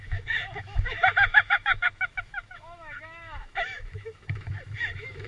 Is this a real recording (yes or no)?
no